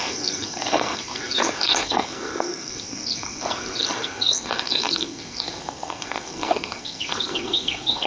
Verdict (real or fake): fake